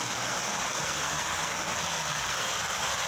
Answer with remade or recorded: remade